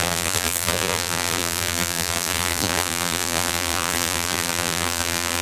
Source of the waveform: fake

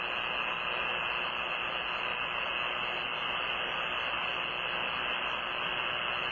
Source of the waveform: real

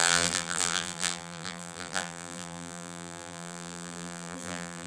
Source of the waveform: fake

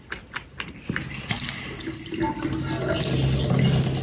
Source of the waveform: real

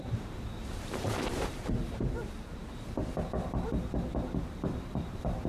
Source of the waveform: fake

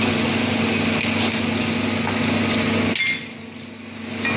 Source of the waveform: real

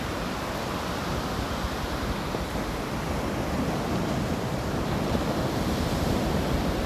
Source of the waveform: real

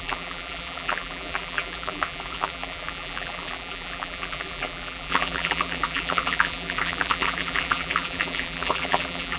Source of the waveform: fake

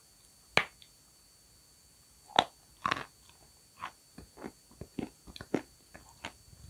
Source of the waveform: real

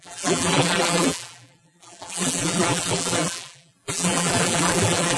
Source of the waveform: fake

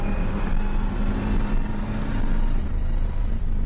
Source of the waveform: fake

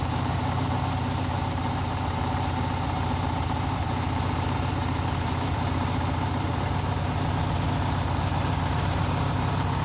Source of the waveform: fake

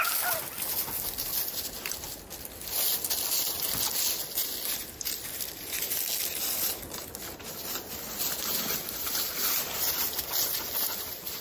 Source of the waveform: real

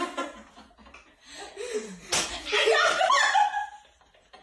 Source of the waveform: real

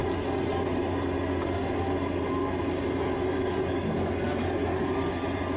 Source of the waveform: real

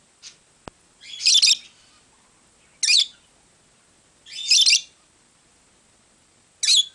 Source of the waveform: real